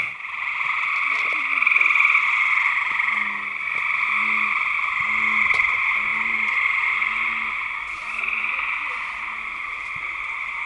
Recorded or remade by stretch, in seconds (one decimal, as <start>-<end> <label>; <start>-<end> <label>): 0.0-10.7 recorded